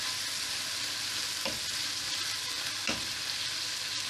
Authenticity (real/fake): real